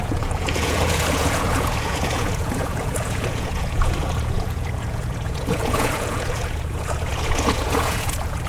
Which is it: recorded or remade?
remade